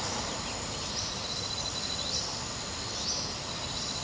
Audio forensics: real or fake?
real